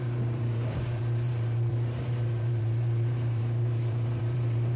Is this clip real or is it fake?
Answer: fake